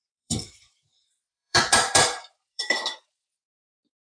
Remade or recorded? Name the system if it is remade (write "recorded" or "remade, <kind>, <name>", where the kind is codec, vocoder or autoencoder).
remade, vocoder, BigVGAN v2